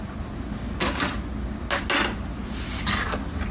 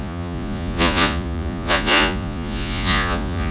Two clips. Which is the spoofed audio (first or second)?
second